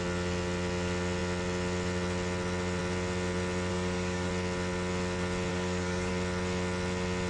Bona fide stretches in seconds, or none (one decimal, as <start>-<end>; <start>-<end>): 0.0-3.7; 4.3-5.5; 6.1-7.3